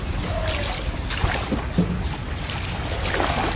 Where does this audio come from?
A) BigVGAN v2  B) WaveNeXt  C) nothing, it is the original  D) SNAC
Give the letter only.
C